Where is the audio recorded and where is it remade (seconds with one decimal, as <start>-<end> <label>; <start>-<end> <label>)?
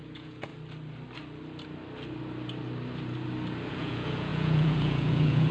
0.0-0.5 remade; 0.5-3.7 recorded; 3.7-5.5 remade